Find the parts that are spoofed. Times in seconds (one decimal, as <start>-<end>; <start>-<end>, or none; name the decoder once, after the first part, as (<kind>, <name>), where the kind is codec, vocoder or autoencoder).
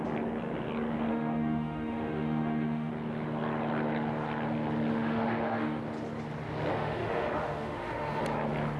1.1-2.9 (autoencoder, DAC-VAE); 4.9-5.8; 6.7-8.2